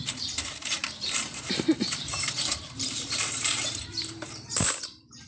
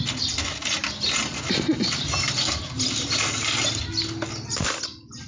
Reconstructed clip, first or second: first